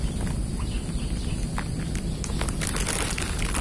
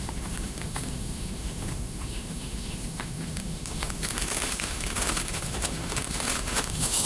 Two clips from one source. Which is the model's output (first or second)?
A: second